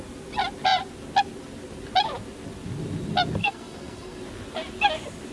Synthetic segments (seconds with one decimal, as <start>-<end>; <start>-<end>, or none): 3.4-4.2